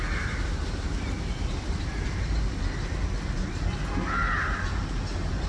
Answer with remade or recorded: recorded